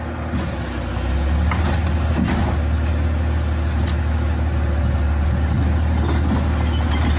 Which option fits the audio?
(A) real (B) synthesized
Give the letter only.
A